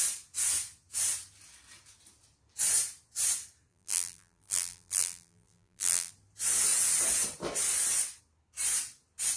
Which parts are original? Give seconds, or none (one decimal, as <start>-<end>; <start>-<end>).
0.0-3.7; 6.1-9.4